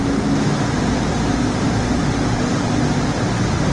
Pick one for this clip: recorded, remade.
recorded